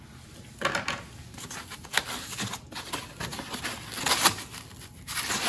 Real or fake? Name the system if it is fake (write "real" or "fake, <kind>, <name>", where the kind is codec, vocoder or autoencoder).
real